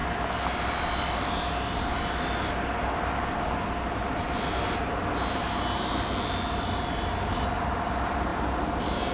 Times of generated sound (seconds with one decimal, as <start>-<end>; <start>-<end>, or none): none